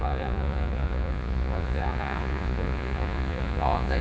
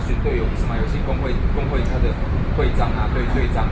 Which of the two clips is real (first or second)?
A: second